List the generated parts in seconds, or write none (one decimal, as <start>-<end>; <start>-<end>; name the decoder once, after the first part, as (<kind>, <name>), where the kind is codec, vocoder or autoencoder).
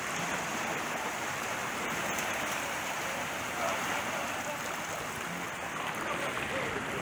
0.5-4.7 (vocoder, BigVGAN v2)